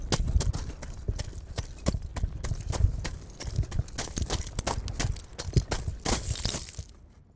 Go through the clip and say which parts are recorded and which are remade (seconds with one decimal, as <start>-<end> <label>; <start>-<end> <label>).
0.0-7.4 recorded